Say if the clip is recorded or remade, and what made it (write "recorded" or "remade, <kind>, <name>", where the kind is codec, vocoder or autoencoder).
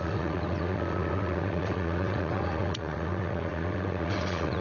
remade, vocoder, WaveNeXt